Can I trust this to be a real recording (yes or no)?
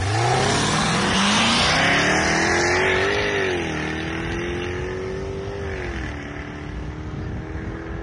yes